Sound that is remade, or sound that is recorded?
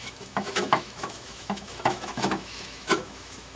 remade